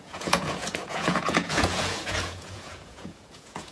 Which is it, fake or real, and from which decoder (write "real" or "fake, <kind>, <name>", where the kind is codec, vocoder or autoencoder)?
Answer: fake, vocoder, Vocos